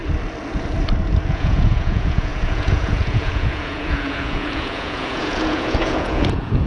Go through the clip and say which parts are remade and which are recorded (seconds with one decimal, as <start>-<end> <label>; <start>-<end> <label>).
0.0-1.3 recorded; 1.3-6.7 remade